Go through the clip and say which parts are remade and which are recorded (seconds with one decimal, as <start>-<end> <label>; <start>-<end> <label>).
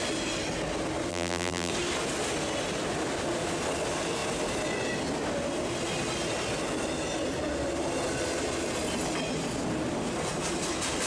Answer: 0.0-1.1 recorded; 1.1-1.7 remade; 1.7-11.1 recorded